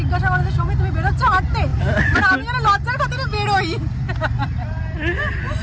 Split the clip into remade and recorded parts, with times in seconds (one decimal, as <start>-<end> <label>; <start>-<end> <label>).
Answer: 0.0-5.6 recorded